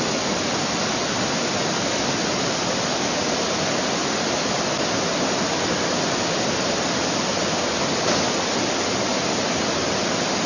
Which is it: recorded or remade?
recorded